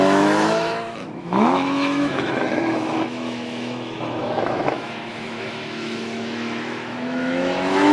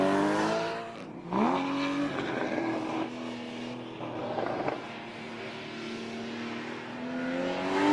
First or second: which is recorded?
second